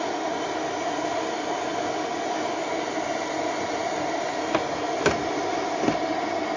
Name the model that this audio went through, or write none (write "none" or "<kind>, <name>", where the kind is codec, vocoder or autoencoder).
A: none